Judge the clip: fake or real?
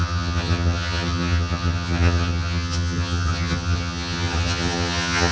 fake